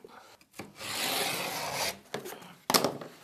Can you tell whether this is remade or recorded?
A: recorded